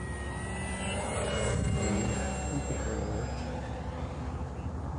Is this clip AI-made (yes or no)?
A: no